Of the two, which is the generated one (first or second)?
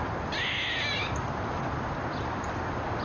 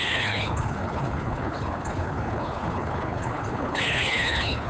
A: second